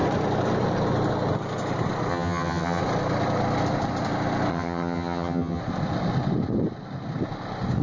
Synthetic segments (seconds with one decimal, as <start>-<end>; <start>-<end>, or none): 2.1-2.8; 4.5-5.6